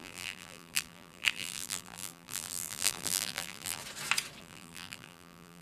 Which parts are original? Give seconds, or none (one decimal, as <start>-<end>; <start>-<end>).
3.8-4.4